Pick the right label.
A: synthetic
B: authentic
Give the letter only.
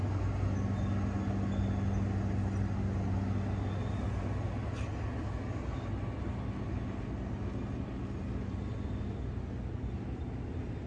B